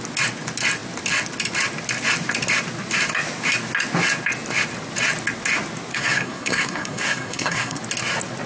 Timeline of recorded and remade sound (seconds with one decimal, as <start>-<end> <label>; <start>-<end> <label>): 0.0-5.9 recorded; 5.9-7.8 remade; 7.8-8.5 recorded